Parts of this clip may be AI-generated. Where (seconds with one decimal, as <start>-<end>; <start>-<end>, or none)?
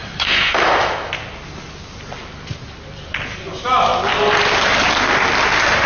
0.0-1.1